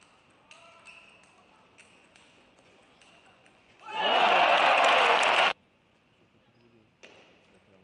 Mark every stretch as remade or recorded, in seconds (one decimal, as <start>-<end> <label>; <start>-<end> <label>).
0.0-1.8 recorded; 1.8-6.1 remade; 6.1-7.8 recorded